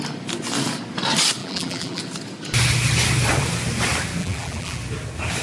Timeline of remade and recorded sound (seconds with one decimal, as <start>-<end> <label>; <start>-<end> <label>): 0.0-1.4 recorded; 1.4-2.0 remade; 2.0-4.2 recorded; 4.2-4.8 remade; 4.8-5.4 recorded